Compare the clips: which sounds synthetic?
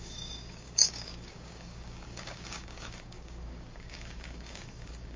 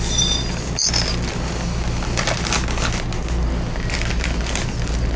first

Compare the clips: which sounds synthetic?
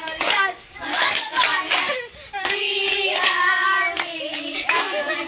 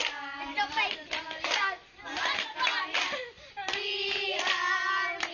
first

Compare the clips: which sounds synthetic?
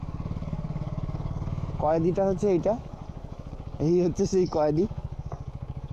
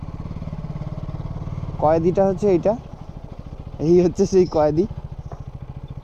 first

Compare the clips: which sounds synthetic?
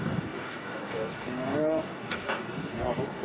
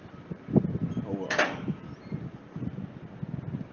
first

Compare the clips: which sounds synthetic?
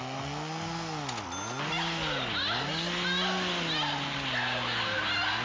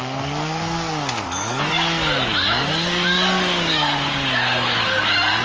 second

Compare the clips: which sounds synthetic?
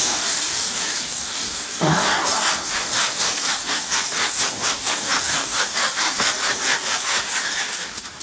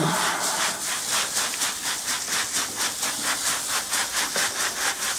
first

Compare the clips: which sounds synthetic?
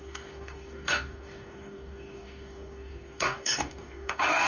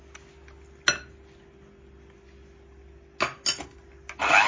first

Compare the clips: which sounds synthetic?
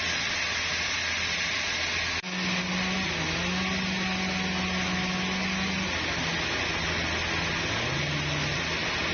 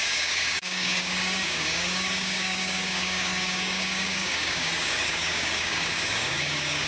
second